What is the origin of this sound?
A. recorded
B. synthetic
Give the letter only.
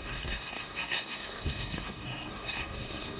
B